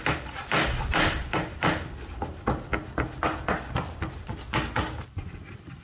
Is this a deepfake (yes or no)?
no